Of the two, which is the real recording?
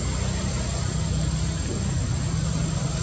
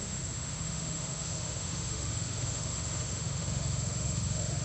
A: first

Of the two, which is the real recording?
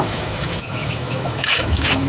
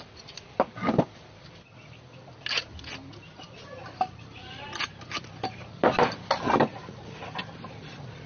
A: second